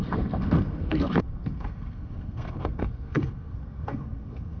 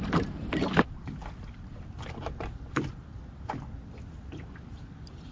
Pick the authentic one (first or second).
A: second